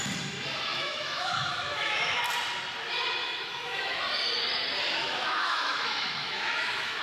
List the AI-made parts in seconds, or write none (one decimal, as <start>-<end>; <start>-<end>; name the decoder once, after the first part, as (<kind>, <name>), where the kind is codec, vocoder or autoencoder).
0.7-2.2 (autoencoder, DAC-VAE); 3.2-4.0; 5.0-7.0